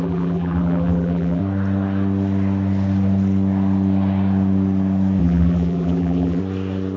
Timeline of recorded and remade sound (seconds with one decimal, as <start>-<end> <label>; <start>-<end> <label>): 0.0-1.4 remade; 1.4-5.2 recorded; 5.2-6.4 remade; 6.4-7.0 recorded